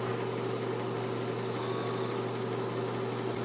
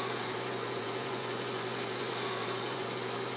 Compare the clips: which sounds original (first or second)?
first